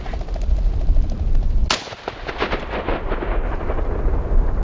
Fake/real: real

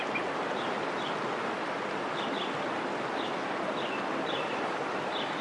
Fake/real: real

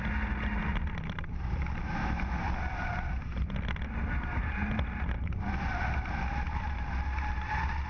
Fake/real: real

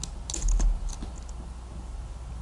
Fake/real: real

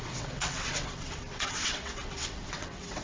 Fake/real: fake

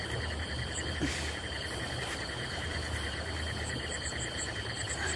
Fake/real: fake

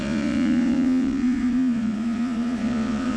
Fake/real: fake